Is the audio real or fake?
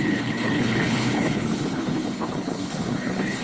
fake